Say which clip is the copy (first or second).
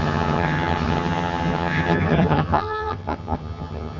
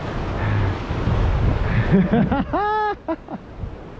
first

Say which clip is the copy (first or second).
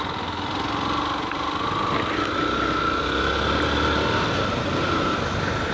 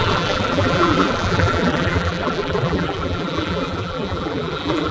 second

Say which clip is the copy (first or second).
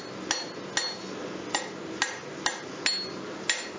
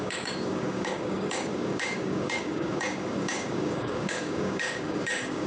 second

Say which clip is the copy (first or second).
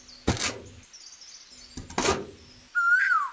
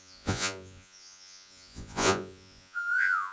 second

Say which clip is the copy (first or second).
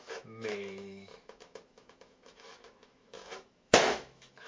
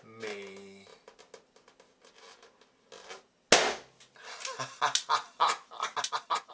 first